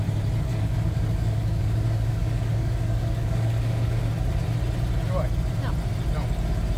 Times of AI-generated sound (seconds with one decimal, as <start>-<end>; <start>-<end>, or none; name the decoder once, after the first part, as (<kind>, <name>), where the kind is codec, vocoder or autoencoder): 0.5-4.1 (codec, DAC)